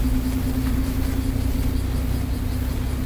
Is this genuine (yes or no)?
yes